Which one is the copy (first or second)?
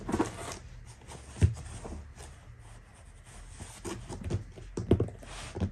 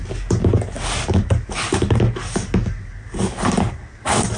second